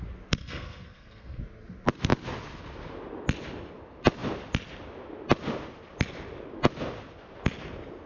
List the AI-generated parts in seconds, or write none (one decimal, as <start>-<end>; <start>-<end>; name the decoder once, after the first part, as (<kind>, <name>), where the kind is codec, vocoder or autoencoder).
0.4-1.4 (codec, SNAC)